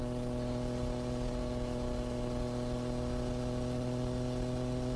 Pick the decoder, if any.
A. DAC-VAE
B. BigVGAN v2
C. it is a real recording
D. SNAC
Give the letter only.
C